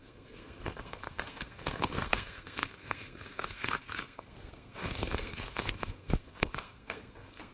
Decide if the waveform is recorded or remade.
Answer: remade